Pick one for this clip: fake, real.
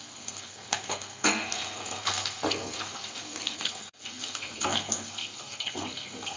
fake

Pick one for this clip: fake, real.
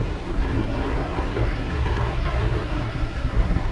fake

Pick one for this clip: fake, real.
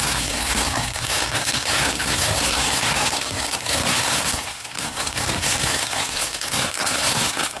fake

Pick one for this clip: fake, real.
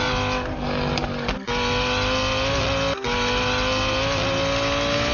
real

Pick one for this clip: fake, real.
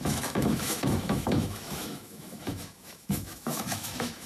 fake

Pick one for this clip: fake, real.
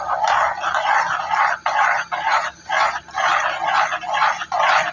real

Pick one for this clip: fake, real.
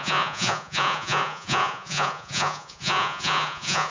fake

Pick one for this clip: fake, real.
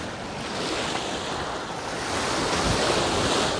real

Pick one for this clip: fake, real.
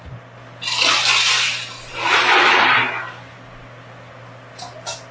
real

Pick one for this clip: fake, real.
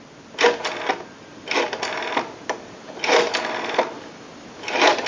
real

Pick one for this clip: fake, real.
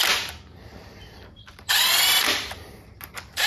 fake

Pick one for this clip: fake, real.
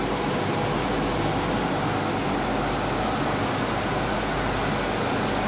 real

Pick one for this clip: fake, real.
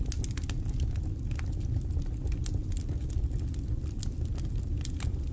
real